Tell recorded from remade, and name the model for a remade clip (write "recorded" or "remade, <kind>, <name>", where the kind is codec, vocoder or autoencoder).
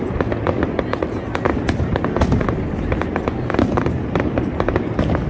recorded